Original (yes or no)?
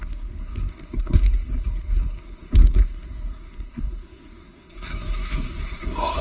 no